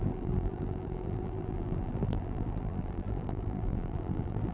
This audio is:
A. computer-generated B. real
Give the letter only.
A